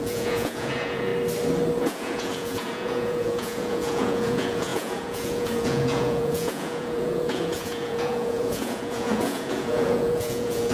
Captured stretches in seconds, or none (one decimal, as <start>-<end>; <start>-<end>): 1.1-1.8